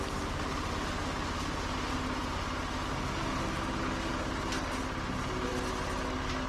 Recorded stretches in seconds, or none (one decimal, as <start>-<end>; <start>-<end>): 0.0-6.5

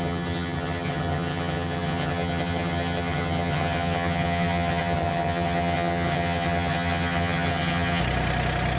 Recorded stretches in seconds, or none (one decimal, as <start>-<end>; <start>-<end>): 8.0-8.8

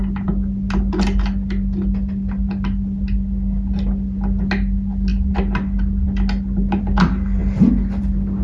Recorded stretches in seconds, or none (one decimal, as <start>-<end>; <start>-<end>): 0.0-8.4

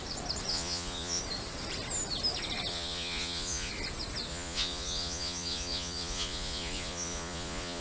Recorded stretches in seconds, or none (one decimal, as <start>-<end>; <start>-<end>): 0.0-0.5; 1.2-2.7; 3.7-4.3

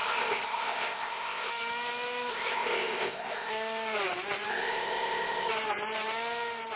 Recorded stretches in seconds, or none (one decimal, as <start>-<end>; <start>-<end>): 1.5-2.3; 3.5-4.5; 5.5-6.8

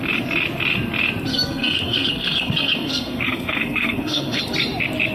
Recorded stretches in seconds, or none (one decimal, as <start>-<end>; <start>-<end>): 0.0-1.3; 4.4-5.1

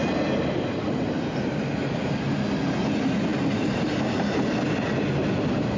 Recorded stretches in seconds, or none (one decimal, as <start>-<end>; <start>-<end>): 0.0-5.8